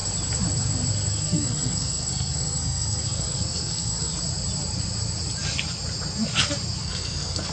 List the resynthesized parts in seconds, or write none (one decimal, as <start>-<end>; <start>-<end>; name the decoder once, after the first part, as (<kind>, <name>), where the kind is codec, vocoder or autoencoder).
1.1-4.1 (codec, SNAC); 6.8-7.5